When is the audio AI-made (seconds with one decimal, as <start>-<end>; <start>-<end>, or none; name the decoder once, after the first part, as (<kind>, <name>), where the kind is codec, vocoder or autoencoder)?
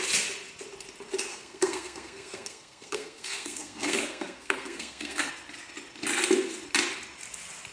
1.3-5.3 (codec, SNAC)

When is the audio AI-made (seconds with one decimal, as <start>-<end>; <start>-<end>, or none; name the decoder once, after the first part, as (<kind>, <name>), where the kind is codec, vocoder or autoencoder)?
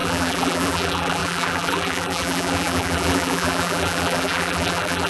0.0-5.1 (vocoder, BigVGAN v2)